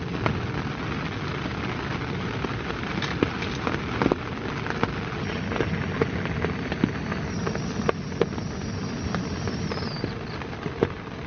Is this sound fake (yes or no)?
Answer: no